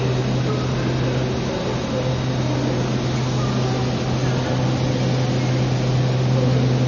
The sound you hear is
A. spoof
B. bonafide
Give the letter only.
B